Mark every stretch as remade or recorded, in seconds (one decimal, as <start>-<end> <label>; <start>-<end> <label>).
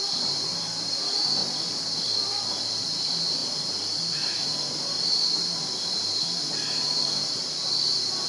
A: 0.0-8.3 remade